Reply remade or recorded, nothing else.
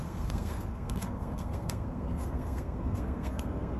remade